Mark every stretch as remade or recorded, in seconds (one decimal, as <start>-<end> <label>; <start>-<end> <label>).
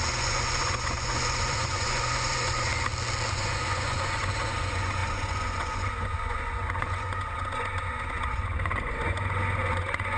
0.0-2.7 remade; 2.7-3.3 recorded; 3.3-10.2 remade